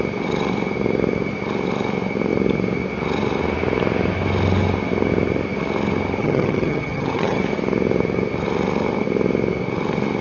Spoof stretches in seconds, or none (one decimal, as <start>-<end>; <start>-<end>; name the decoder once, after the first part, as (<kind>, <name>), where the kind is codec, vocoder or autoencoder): 6.2-7.4 (vocoder, HiFi-GAN)